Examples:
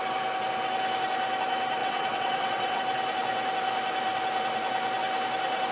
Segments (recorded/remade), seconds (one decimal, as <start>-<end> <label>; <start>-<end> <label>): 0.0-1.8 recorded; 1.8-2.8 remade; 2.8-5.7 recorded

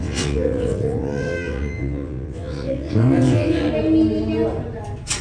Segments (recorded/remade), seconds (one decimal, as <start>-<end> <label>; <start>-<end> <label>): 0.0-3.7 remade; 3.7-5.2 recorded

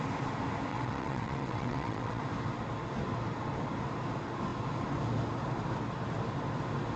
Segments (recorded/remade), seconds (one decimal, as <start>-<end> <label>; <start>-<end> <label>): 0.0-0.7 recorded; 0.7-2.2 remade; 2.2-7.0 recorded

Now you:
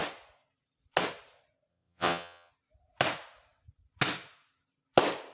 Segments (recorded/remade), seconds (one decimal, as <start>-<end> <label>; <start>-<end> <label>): 0.0-1.7 recorded; 1.7-2.5 remade; 2.5-5.3 recorded

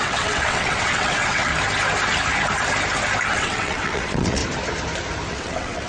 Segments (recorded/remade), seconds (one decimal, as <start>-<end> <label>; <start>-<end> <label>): 0.0-1.5 remade; 1.5-3.3 recorded; 3.3-4.4 remade; 4.4-5.3 recorded; 5.3-5.9 remade